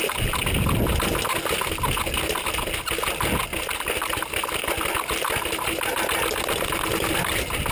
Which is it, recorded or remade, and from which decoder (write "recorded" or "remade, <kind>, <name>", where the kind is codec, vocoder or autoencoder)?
recorded